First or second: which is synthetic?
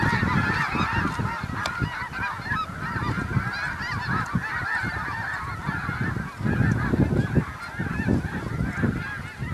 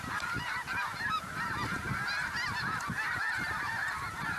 second